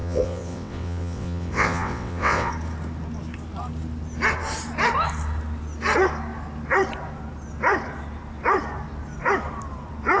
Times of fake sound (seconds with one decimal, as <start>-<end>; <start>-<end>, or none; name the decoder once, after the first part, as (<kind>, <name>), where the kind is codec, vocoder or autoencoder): 0.0-2.5 (vocoder, WaveNeXt)